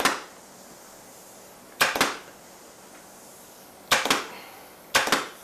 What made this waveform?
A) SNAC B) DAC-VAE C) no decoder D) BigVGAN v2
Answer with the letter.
C